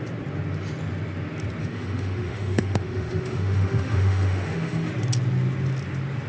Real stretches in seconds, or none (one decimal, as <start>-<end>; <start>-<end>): 0.0-1.6; 4.9-6.3